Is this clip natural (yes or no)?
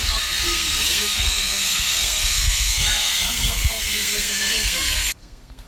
no